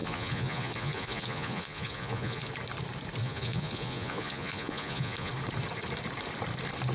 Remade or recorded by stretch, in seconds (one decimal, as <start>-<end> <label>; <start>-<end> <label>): 0.0-2.5 remade; 2.5-3.2 recorded; 3.2-5.3 remade; 5.3-6.9 recorded